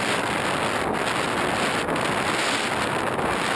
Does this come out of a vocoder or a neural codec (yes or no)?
no